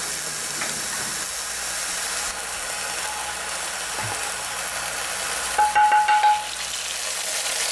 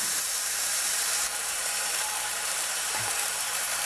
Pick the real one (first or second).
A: first